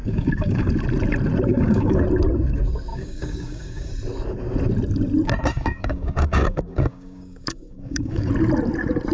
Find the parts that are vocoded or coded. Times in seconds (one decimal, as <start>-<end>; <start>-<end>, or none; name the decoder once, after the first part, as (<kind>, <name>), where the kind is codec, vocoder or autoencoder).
0.0-0.7 (codec, DAC); 1.5-2.0; 2.9-3.9; 5.5-8.3